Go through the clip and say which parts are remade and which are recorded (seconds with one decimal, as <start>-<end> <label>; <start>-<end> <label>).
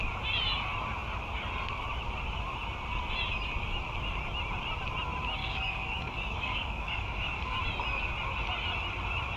0.0-5.4 recorded; 5.4-7.6 remade; 7.6-9.4 recorded